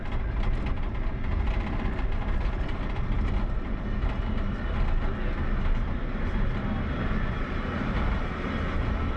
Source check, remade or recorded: recorded